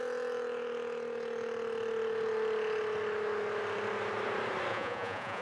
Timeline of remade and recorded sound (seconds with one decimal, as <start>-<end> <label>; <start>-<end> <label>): 0.0-4.7 recorded; 4.7-5.4 remade